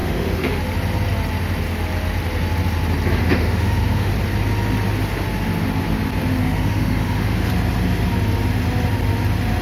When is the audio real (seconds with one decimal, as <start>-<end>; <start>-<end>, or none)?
0.6-3.2; 4.1-6.4; 7.5-9.6